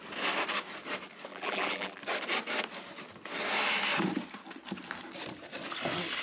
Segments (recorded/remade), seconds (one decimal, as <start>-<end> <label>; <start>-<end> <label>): 0.0-1.3 recorded; 1.3-2.0 remade; 2.0-6.2 recorded